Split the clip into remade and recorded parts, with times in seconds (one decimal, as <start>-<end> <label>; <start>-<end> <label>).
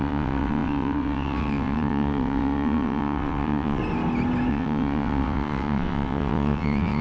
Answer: 0.0-3.8 remade; 3.8-4.5 recorded; 4.5-7.0 remade